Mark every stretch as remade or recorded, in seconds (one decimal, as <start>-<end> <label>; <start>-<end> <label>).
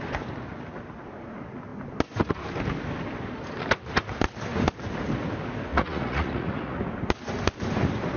0.0-5.7 recorded; 5.7-6.8 remade; 6.8-8.2 recorded